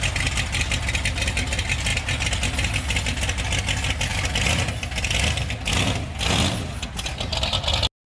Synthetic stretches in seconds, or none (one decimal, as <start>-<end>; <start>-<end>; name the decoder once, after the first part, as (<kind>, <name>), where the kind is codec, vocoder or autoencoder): none